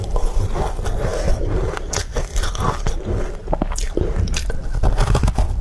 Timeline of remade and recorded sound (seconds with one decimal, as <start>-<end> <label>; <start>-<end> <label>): 0.0-5.6 recorded